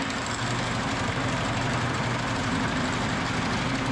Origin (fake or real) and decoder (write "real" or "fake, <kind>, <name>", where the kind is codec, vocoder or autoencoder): real